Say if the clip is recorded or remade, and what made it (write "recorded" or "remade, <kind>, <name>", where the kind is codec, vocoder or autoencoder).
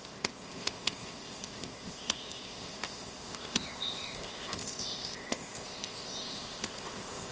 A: remade, codec, ZipCodec